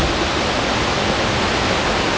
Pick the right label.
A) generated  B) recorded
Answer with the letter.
B